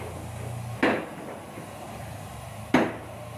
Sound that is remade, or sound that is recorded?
recorded